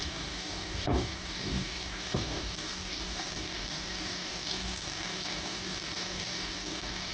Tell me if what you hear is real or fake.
fake